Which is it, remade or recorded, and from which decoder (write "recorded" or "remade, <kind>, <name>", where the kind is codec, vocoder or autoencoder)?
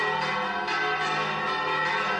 recorded